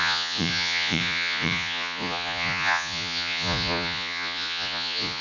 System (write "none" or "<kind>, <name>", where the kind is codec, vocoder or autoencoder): vocoder, Vocos